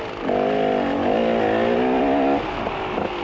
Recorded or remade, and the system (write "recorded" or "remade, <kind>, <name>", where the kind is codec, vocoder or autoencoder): recorded